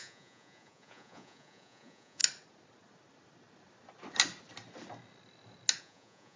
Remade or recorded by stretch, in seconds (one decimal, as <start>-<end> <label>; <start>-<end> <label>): 0.0-2.2 remade; 2.2-5.8 recorded; 5.8-6.4 remade